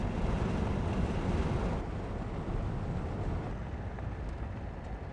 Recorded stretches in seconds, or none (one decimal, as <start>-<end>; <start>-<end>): 0.0-5.1